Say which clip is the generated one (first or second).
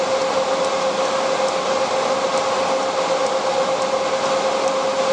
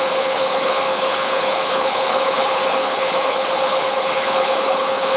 second